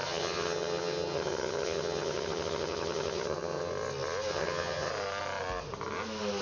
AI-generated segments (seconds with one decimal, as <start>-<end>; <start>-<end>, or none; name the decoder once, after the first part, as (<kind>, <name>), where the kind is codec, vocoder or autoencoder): 0.0-3.7 (vocoder, HiFi-GAN); 4.3-4.9